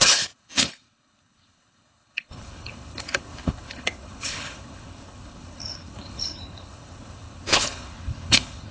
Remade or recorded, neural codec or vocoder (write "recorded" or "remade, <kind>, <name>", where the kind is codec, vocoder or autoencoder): remade, codec, HILCodec